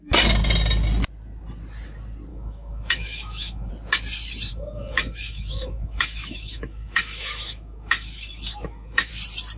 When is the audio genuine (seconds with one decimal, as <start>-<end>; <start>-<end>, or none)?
0.0-2.3; 3.7-4.5; 9.1-9.6